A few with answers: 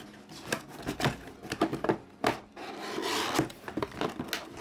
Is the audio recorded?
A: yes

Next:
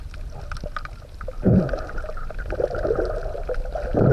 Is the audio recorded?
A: yes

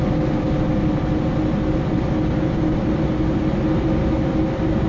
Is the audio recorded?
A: yes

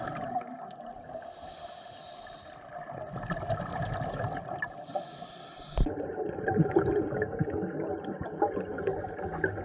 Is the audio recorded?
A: yes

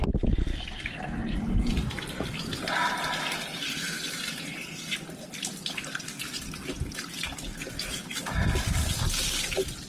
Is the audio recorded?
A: yes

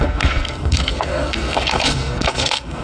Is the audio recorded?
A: no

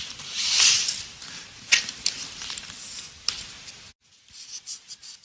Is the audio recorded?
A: yes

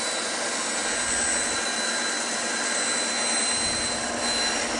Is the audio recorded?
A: yes